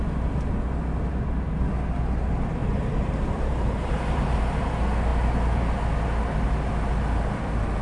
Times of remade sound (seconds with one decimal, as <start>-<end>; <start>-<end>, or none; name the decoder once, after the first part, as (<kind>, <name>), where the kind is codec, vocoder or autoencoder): 2.6-4.4 (vocoder, BigVGAN v2)